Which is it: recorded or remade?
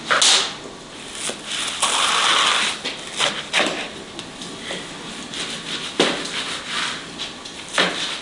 recorded